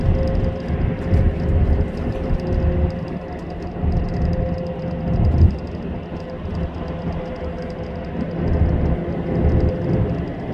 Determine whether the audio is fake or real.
real